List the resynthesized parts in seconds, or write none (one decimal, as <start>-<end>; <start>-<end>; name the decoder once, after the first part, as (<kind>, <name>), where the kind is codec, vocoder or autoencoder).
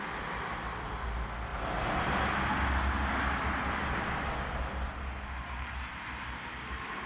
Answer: none